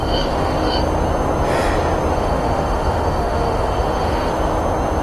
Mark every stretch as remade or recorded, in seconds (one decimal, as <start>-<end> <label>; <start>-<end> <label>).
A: 0.0-0.8 remade; 0.8-2.2 recorded; 2.2-4.3 remade; 4.3-5.0 recorded